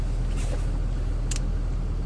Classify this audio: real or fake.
real